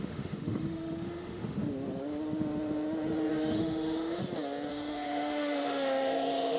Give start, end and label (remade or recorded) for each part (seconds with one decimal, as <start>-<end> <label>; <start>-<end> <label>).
0.0-1.6 remade; 1.6-3.3 recorded; 3.3-4.2 remade; 4.2-4.7 recorded; 4.7-6.6 remade